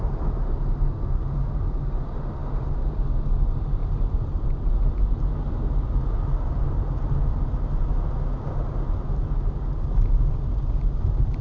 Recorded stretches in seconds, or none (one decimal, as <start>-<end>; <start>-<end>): 0.0-11.4